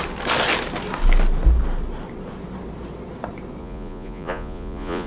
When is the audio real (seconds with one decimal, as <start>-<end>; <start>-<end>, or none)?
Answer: 0.0-3.6